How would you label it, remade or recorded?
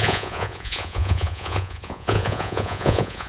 remade